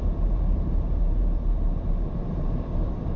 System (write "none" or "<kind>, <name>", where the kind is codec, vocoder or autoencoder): vocoder, BigVGAN v2